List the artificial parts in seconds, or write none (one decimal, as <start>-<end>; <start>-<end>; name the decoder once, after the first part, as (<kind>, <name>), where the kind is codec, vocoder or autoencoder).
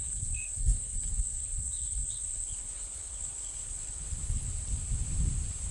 0.0-4.5 (codec, HILCodec)